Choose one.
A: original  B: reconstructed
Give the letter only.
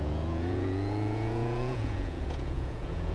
B